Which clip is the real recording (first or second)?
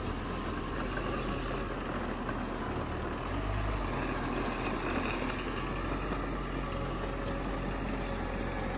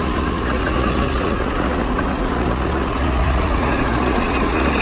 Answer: first